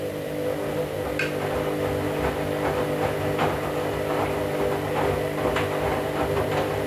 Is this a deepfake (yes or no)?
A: no